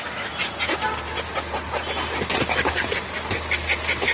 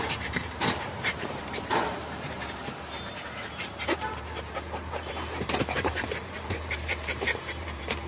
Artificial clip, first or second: second